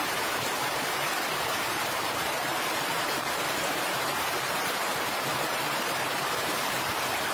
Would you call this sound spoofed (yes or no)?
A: yes